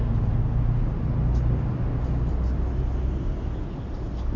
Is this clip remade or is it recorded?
recorded